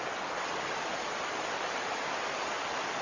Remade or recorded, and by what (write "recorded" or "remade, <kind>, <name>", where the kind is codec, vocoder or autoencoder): recorded